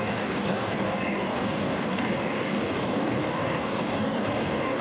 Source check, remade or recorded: remade